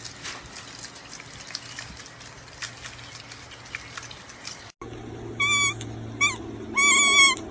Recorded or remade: recorded